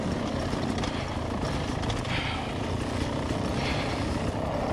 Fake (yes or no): no